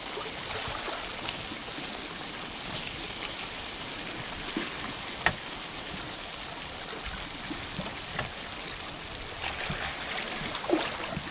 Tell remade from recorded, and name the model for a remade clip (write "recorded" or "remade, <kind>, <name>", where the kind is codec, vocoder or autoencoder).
recorded